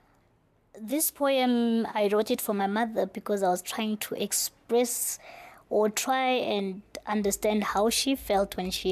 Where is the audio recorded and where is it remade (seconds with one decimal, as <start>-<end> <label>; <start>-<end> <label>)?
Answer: 0.0-0.9 recorded; 0.9-2.6 remade; 2.6-8.9 recorded